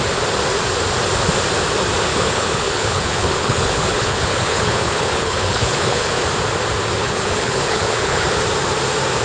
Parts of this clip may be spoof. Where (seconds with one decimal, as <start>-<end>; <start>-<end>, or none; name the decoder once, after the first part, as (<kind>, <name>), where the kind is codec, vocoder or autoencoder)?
2.1-6.2 (codec, HILCodec); 7.0-8.4